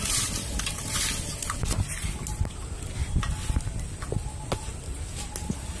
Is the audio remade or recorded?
recorded